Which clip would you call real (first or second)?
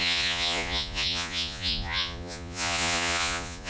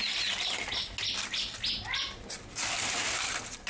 second